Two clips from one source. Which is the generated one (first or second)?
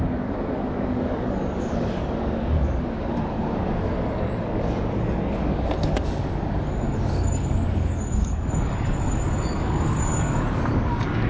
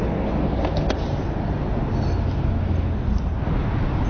first